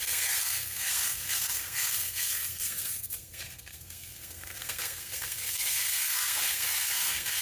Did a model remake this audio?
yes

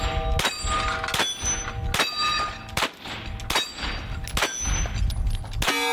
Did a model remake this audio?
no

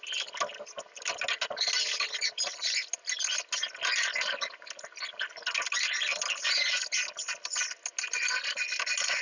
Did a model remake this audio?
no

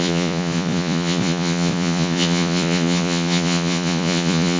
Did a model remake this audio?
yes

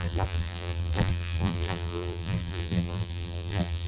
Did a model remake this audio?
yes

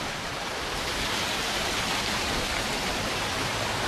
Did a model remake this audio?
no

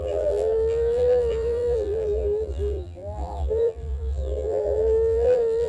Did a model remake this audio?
yes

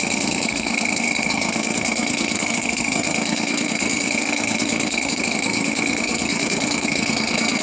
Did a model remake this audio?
yes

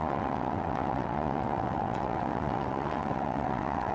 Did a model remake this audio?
yes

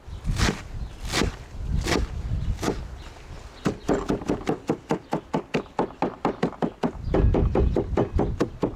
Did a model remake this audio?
no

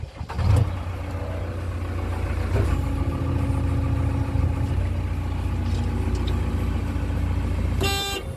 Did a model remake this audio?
no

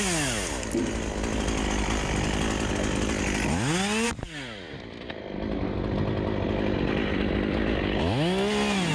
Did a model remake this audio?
no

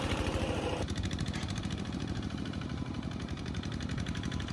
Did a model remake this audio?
yes